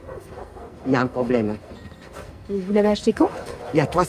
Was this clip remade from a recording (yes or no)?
yes